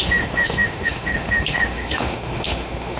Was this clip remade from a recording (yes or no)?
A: yes